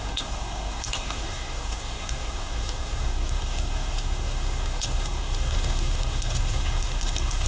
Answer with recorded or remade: remade